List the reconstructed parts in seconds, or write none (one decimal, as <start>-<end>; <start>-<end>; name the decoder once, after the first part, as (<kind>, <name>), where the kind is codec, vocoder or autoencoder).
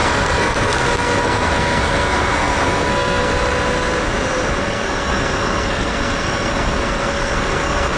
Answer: 0.0-3.3 (codec, SNAC); 4.6-8.0